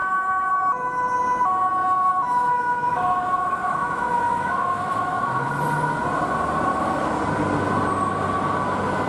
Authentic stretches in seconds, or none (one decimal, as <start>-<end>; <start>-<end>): 0.5-1.8; 5.5-6.7; 7.2-9.1